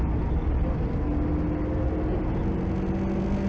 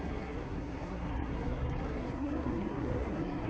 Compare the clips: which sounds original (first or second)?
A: first